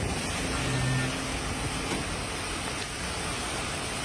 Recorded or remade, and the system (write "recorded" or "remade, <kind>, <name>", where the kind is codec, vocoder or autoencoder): recorded